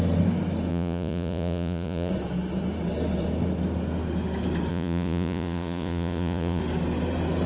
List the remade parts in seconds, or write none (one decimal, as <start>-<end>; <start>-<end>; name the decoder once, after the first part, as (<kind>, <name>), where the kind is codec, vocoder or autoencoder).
0.7-2.1 (vocoder, Vocos); 4.7-6.6

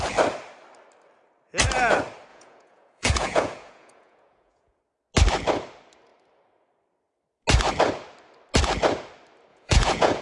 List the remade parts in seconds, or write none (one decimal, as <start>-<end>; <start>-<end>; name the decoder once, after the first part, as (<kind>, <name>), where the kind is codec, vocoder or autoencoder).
2.3-4.8 (vocoder, Vocos); 9.5-10.2

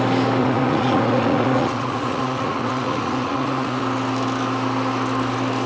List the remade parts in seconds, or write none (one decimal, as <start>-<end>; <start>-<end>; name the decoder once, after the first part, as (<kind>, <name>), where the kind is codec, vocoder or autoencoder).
0.4-3.8 (vocoder, Vocos)

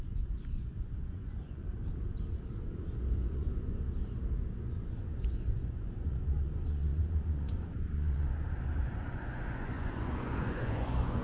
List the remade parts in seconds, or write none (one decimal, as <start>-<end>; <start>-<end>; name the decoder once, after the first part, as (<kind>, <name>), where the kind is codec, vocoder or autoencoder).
0.0-1.6 (vocoder, Vocos); 3.3-4.0; 4.6-11.2

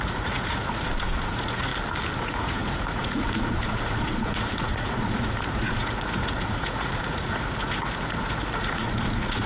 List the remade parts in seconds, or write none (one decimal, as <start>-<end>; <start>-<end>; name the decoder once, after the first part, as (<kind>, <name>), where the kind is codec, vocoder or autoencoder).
0.0-1.7 (vocoder, Vocos); 2.2-9.5

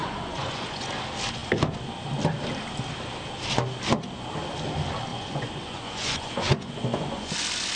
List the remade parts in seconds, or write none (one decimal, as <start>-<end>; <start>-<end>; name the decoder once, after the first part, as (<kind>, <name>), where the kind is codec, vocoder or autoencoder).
0.0-0.9 (vocoder, Vocos); 5.1-7.3

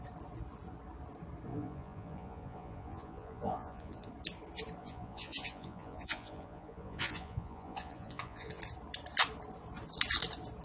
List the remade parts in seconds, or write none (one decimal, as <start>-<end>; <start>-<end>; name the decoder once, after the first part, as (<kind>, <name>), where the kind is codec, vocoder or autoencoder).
1.5-4.1 (vocoder, Vocos); 4.8-8.6